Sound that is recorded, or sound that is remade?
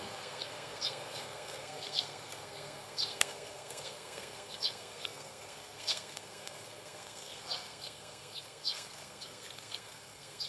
remade